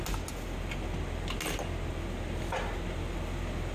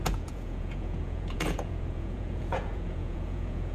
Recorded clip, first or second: first